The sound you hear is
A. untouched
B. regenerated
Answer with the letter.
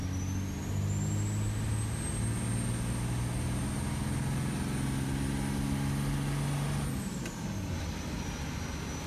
A